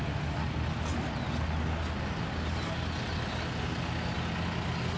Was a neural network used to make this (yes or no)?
no